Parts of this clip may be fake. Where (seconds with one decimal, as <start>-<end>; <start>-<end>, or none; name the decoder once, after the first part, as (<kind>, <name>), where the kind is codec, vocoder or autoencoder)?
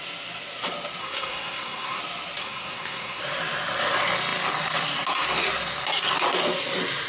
1.0-2.0 (codec, SNAC); 2.4-3.2